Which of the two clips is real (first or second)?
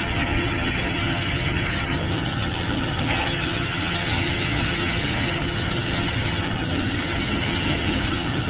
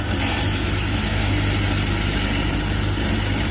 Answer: second